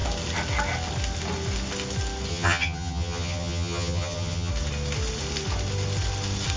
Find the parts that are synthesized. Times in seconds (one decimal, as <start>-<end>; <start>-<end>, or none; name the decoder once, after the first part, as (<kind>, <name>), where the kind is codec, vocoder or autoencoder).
2.3-4.5 (vocoder, HiFi-GAN)